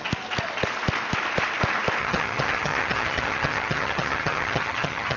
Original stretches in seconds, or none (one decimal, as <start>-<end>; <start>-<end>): 0.0-2.0

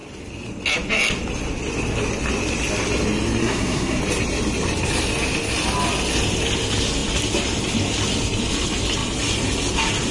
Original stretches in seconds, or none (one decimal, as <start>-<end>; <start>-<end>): 0.0-3.4; 4.0-10.1

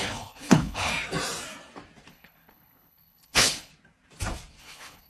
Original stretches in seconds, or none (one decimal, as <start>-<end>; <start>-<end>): 0.9-2.1; 3.7-4.6

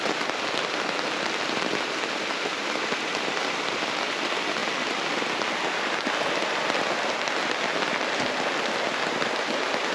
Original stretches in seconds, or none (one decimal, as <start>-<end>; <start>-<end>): 0.0-9.9

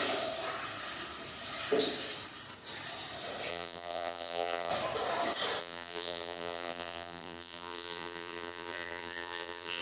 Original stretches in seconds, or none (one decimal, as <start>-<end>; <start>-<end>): 0.0-3.5; 4.7-5.6

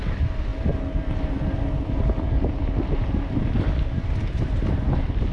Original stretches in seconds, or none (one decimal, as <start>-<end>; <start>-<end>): 0.0-5.3